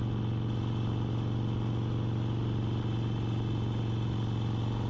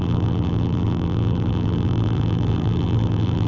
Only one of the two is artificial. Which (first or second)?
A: second